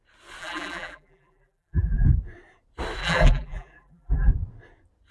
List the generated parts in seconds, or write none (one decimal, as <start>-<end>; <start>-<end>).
0.4-2.0; 3.0-4.3